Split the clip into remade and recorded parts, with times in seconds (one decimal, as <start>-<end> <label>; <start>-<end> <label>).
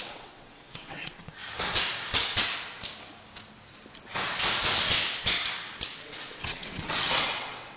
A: 0.0-1.4 remade; 1.4-6.0 recorded; 6.0-7.8 remade